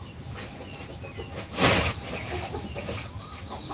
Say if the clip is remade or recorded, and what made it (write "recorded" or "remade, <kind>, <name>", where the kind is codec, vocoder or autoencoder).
recorded